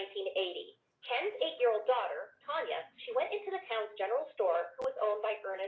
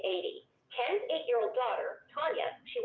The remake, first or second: second